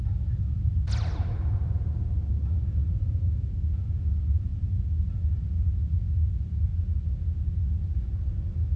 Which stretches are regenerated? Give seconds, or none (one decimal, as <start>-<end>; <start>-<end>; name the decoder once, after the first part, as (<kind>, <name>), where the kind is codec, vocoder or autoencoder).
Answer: none